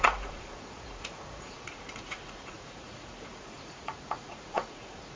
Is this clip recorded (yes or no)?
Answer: no